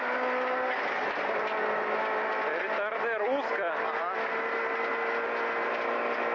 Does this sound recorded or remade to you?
recorded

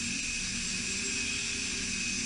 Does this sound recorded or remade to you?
recorded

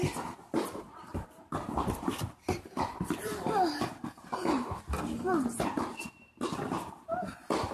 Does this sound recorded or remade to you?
remade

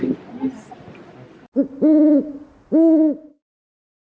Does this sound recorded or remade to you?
recorded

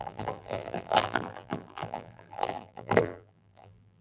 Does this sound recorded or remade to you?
remade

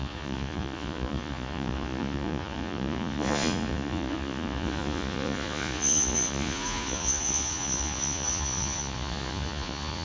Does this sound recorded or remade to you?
remade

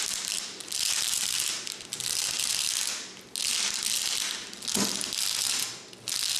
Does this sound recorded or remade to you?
recorded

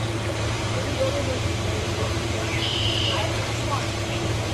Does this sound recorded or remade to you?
remade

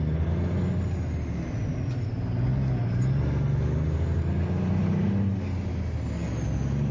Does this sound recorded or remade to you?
recorded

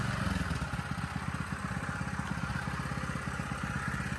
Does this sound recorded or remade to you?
recorded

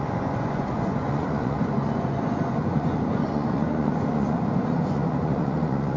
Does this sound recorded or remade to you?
remade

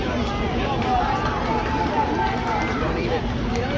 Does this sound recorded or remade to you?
recorded